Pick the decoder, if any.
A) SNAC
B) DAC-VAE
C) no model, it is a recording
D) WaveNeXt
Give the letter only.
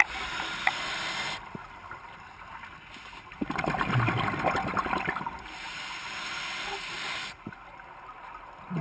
C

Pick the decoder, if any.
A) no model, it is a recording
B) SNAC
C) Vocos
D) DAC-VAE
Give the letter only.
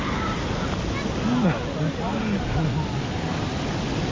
A